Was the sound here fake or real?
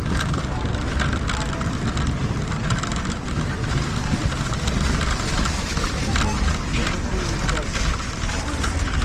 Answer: real